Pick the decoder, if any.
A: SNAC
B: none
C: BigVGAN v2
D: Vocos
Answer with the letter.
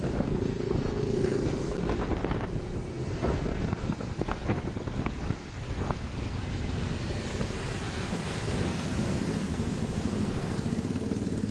A